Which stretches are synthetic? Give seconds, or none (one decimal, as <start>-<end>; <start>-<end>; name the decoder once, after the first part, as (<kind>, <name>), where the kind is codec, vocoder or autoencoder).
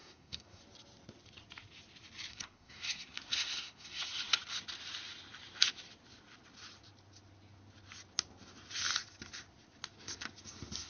0.0-0.6 (codec, SNAC); 2.3-4.0